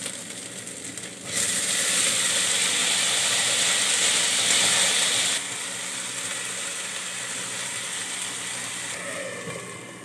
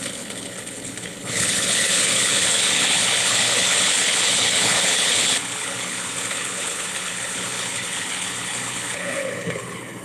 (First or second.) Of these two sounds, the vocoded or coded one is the second